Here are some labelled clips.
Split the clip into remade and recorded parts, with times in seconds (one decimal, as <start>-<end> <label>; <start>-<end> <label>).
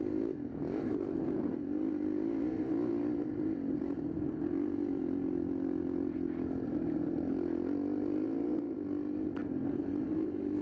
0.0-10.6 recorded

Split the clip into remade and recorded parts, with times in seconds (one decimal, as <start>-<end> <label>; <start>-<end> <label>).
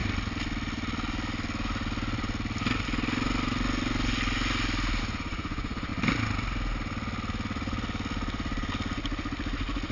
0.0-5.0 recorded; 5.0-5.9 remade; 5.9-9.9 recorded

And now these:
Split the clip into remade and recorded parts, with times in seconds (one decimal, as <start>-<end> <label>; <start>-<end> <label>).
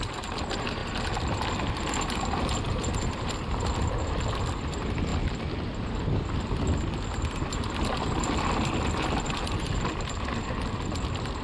0.0-11.4 recorded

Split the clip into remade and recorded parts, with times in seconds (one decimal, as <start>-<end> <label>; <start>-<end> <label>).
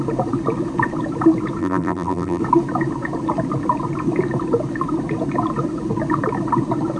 0.0-1.6 recorded; 1.6-2.4 remade; 2.4-7.0 recorded